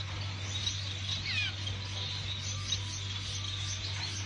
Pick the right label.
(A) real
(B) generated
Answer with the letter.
A